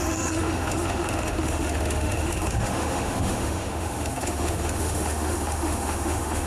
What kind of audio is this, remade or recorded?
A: remade